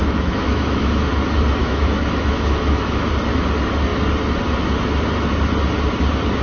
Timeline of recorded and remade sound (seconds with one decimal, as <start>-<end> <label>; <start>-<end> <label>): 0.0-1.1 remade; 1.1-1.6 recorded; 1.6-3.1 remade; 3.1-6.4 recorded